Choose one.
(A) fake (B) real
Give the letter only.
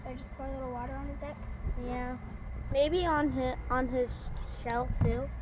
B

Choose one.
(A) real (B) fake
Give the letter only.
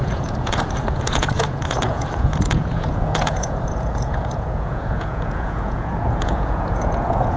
B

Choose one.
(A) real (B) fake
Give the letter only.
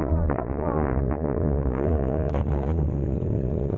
B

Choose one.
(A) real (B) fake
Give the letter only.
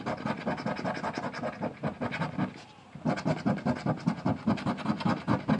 A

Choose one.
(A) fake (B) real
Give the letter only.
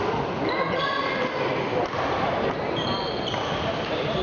B